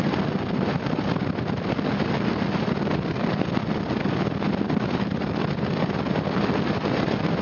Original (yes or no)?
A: yes